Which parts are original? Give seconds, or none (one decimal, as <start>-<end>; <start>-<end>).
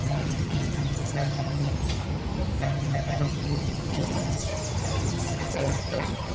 1.7-2.6; 4.5-5.1